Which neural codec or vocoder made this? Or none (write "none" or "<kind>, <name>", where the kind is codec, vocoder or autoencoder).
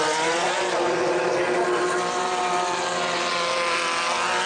none